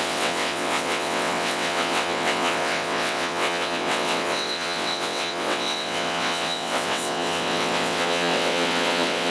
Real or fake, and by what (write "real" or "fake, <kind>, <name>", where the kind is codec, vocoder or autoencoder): fake, vocoder, WaveNeXt